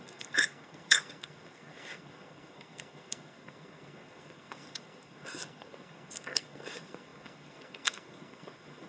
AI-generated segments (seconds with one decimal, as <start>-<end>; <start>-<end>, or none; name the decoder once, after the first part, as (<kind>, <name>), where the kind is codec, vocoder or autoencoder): 0.0-8.9 (codec, SNAC)